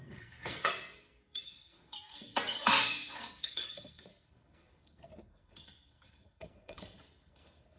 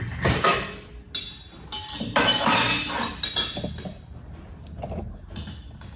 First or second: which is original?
second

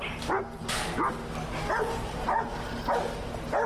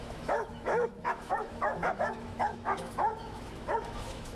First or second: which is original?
first